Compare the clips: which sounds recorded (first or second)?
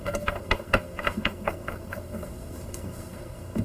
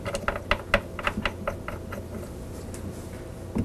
second